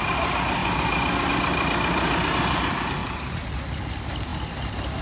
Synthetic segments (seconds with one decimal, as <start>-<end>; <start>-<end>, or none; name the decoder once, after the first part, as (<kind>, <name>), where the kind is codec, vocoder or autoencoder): none